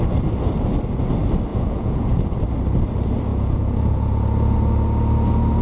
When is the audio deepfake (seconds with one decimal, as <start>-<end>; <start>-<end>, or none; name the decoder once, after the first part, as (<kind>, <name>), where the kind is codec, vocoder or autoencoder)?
1.5-2.4 (vocoder, Vocos); 3.3-4.2